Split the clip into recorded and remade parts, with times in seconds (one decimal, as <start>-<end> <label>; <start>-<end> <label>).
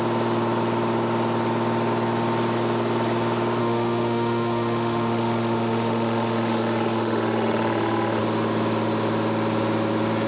0.0-3.6 recorded; 3.6-8.2 remade; 8.2-10.3 recorded